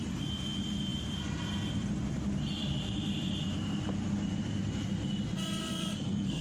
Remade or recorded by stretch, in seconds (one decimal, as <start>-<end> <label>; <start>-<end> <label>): 0.0-5.6 recorded; 5.6-6.4 remade

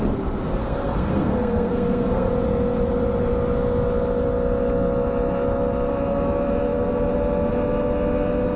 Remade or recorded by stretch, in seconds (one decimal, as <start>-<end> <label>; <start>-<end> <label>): 0.0-0.6 recorded; 0.6-2.3 remade; 2.3-8.6 recorded

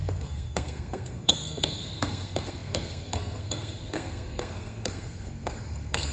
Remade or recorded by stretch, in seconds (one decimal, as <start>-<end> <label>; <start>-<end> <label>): 0.0-6.1 remade

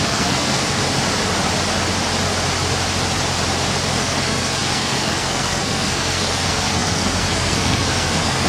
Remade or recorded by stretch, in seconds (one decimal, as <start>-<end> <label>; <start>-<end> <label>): 0.0-0.8 remade; 0.8-3.9 recorded; 3.9-8.5 remade

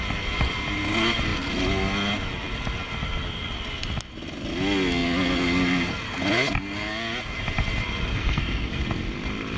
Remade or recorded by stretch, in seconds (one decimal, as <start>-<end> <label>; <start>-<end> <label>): 0.0-8.1 recorded; 8.1-8.8 remade; 8.8-9.6 recorded

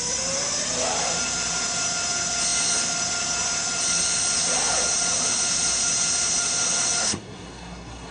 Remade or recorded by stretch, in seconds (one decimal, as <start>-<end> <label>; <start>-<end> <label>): 0.0-7.0 recorded; 7.0-8.1 remade

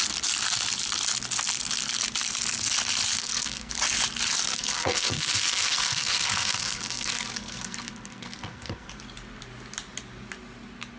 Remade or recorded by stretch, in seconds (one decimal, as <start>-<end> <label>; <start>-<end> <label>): 0.0-3.2 recorded; 3.2-3.7 remade; 3.7-4.5 recorded; 4.5-8.9 remade; 8.9-11.0 recorded